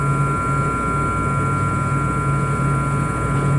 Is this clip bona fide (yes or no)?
yes